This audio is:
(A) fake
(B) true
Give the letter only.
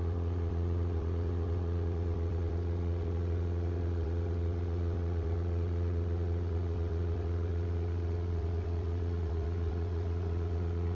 A